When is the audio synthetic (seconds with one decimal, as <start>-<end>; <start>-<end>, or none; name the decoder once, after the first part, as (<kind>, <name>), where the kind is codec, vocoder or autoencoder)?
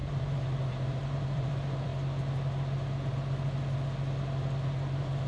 0.0-1.9 (vocoder, BigVGAN v2)